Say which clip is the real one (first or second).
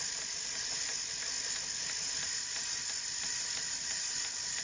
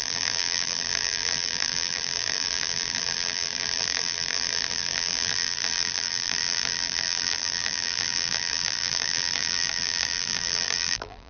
first